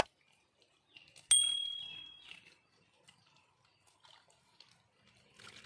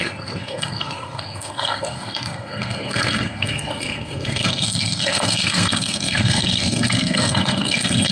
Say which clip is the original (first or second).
first